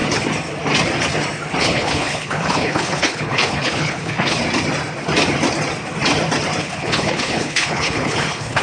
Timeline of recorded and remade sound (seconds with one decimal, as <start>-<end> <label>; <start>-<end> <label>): 0.0-1.6 recorded; 1.6-4.4 remade; 4.4-6.6 recorded; 6.6-8.6 remade